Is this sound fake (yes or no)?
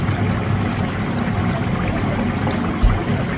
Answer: no